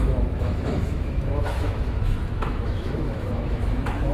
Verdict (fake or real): fake